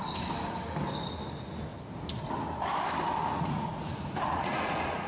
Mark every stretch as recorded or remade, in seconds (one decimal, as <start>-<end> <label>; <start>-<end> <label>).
0.0-3.2 recorded; 3.2-5.1 remade

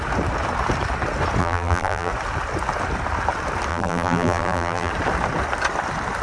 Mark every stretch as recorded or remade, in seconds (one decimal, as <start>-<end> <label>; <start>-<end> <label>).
0.0-1.4 recorded; 1.4-2.1 remade; 2.1-3.7 recorded; 3.7-4.9 remade; 4.9-6.2 recorded

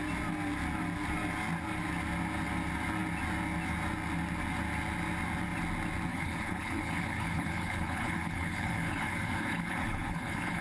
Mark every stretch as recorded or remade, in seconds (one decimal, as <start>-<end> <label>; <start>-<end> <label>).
0.0-6.1 recorded; 6.1-10.6 remade

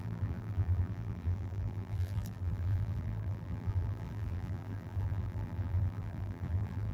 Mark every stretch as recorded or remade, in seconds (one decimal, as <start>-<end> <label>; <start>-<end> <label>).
0.0-6.9 remade

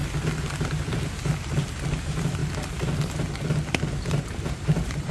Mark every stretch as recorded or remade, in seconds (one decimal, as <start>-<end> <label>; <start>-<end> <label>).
0.0-1.9 recorded; 1.9-2.4 remade; 2.4-4.5 recorded; 4.5-5.1 remade

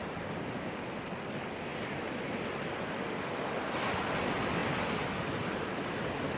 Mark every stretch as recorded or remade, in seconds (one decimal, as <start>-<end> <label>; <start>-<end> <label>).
0.0-6.4 recorded